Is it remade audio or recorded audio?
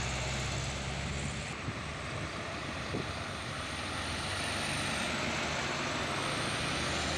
recorded